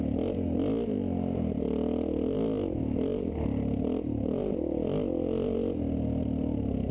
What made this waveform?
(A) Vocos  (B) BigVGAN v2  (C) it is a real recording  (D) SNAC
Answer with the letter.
C